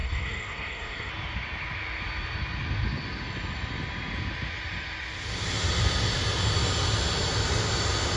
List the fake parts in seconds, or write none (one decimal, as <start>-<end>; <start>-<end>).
0.0-1.1